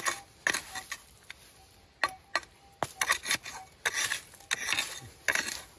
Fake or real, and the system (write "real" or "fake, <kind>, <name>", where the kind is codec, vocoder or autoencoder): real